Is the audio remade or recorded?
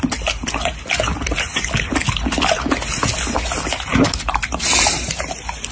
recorded